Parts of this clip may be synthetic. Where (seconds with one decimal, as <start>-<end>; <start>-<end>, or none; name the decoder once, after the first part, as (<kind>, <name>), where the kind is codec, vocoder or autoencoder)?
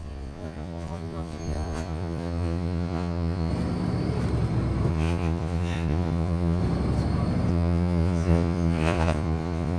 0.0-3.5 (vocoder, Vocos); 4.9-6.6; 7.5-9.8